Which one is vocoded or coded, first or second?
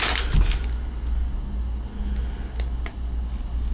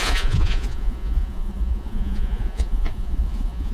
second